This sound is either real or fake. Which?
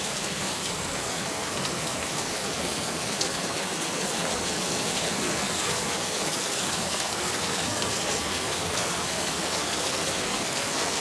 fake